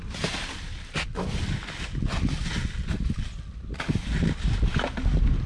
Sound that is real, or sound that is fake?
real